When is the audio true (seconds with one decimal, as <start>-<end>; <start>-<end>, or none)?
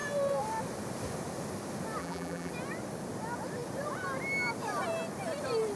0.0-2.0; 2.5-5.8